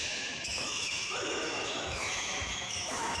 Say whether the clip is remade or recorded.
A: remade